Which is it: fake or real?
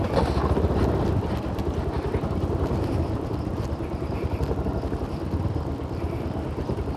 real